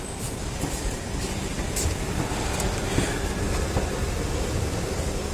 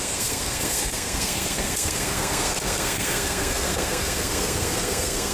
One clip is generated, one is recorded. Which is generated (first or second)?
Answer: second